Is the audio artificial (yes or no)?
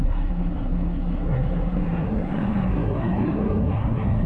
yes